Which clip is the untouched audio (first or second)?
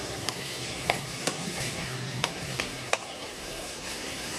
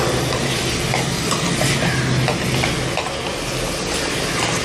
second